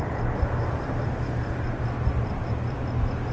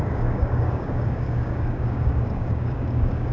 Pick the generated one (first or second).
second